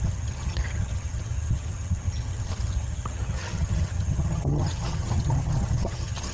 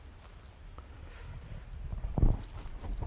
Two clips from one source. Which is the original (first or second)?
second